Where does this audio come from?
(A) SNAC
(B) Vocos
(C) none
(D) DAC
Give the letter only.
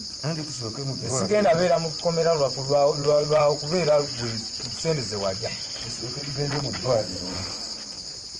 B